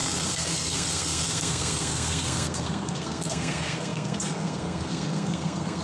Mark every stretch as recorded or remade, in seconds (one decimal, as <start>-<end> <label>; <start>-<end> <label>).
0.0-5.8 remade